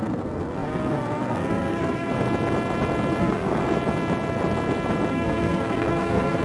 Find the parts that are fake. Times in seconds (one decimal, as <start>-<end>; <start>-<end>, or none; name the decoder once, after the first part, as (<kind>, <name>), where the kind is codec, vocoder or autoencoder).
0.0-2.1 (codec, SNAC); 3.2-3.6; 5.1-6.4